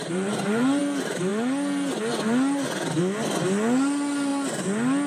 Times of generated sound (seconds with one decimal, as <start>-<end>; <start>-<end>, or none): 0.0-0.8